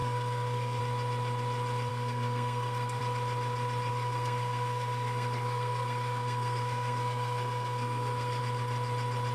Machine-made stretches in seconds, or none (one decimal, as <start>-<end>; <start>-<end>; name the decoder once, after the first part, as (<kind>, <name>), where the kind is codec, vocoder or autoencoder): 0.0-0.8 (codec, SNAC); 1.9-3.0; 3.9-8.4